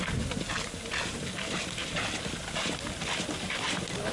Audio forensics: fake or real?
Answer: real